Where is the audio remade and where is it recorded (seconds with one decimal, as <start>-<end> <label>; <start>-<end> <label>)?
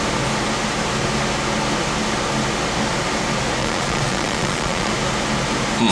0.0-3.6 recorded; 3.6-4.9 remade; 4.9-5.9 recorded